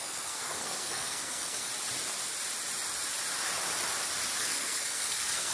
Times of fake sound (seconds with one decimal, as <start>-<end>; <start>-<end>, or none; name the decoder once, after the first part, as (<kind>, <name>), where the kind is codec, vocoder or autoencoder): 0.0-1.7 (codec, SNAC); 4.4-5.5